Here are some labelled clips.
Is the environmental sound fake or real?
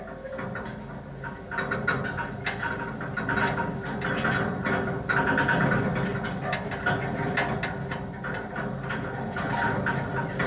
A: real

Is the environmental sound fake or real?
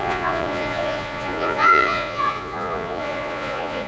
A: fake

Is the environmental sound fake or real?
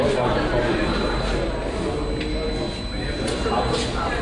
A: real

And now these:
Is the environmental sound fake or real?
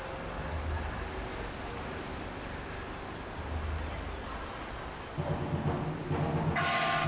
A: real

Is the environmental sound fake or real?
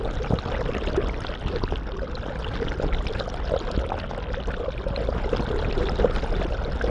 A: real